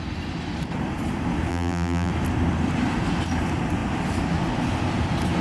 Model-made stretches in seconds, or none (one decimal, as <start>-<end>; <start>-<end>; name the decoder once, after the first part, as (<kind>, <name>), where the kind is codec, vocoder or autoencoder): 1.5-2.1 (vocoder, BigVGAN v2)